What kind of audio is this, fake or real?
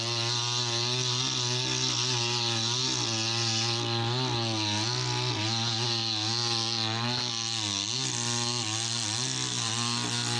real